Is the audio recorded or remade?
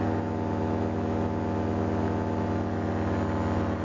recorded